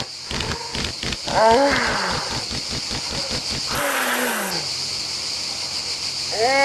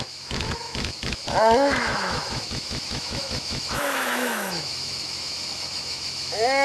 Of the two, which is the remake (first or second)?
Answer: second